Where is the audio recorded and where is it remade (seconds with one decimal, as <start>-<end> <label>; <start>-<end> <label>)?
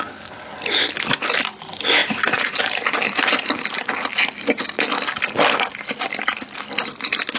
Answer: 0.0-2.0 recorded; 2.0-3.7 remade; 3.7-7.4 recorded